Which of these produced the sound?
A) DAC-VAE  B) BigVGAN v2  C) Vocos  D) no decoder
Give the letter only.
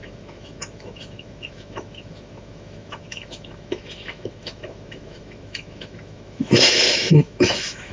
A